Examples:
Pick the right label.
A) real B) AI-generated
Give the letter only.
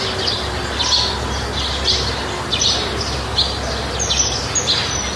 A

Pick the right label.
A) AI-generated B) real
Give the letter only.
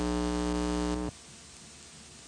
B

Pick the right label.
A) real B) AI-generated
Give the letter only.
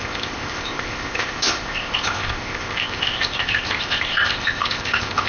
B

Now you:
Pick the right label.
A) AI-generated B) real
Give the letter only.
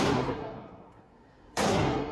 A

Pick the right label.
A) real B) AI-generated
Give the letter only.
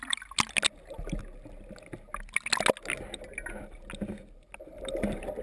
A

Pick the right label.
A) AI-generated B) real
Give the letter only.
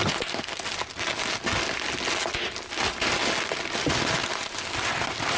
B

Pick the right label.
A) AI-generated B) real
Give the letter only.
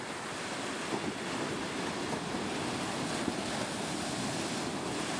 B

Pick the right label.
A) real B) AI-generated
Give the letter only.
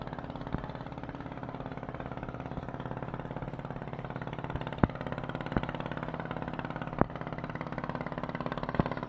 A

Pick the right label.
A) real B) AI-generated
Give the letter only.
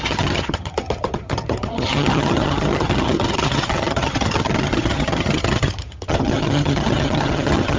B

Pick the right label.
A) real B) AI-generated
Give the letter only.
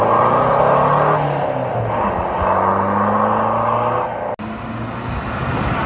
A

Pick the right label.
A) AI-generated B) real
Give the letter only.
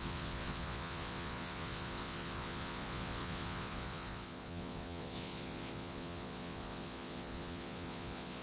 A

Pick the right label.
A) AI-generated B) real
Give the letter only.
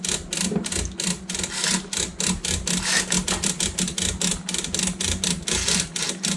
B